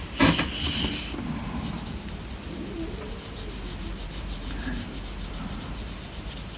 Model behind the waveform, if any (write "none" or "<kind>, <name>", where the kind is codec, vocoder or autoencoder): none